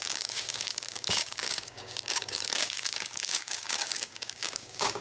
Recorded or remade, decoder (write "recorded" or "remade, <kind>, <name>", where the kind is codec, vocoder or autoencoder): remade, codec, DAC